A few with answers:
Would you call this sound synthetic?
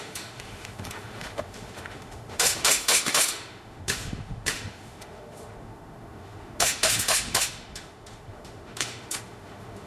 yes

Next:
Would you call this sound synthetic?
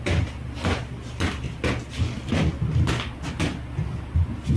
no